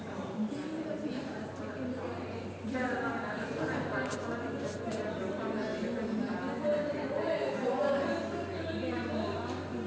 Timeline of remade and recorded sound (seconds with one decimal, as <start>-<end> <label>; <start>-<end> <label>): 0.0-9.9 recorded